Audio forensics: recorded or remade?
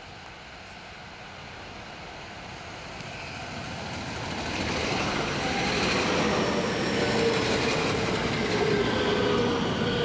recorded